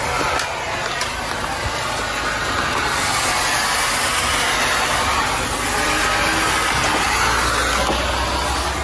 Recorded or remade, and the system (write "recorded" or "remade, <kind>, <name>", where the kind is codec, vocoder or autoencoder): recorded